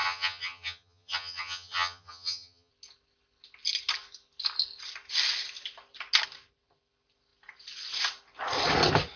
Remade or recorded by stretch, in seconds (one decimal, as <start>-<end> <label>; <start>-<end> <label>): 0.0-2.7 remade; 2.7-9.2 recorded